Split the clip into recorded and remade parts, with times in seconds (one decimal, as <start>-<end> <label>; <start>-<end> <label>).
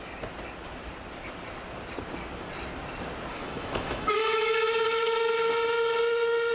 0.0-3.3 recorded; 3.3-5.5 remade; 5.5-6.5 recorded